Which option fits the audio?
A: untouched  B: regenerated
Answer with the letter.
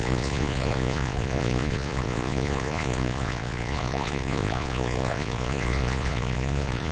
B